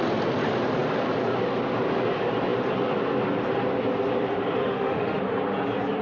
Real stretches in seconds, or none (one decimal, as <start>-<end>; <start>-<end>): 0.0-4.6; 5.2-6.0